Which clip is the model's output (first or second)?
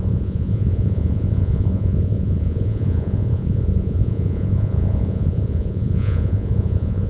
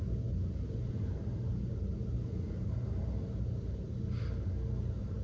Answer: first